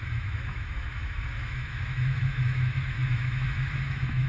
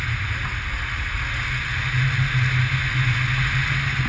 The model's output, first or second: first